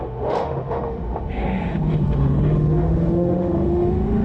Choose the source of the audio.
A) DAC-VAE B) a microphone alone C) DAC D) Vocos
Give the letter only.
A